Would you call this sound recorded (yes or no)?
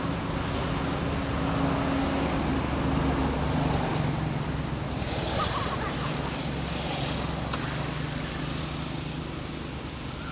yes